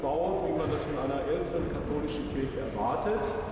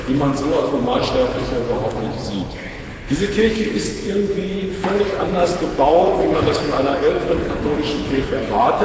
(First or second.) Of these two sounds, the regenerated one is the second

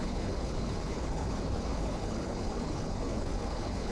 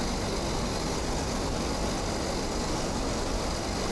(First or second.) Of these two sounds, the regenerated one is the first